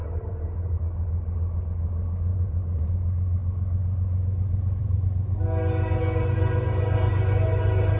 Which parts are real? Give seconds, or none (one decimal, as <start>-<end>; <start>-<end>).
0.8-2.3; 2.9-4.8; 5.4-8.0